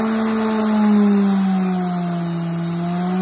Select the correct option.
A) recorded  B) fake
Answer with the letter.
A